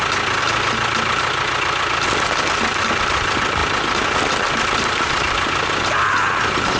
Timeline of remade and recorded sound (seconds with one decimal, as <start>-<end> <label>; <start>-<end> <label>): 0.0-6.8 recorded